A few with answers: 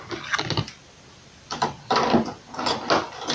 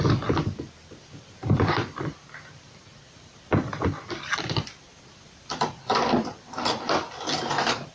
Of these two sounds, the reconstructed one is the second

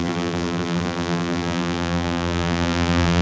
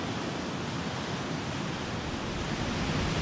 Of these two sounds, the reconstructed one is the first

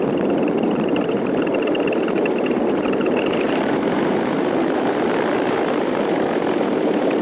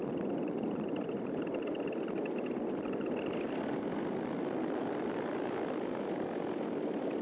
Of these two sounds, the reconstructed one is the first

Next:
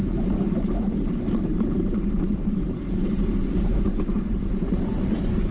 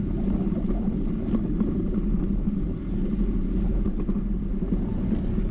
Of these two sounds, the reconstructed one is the first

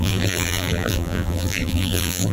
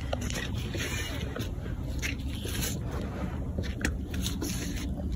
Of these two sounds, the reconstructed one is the first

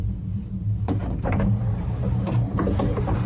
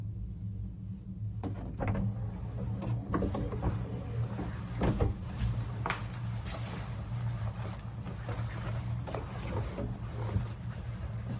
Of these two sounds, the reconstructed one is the first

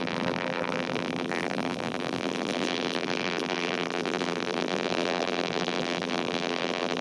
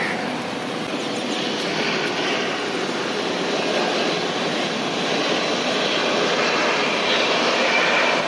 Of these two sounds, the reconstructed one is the first